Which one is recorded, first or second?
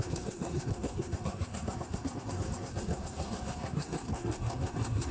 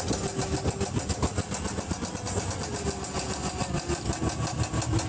second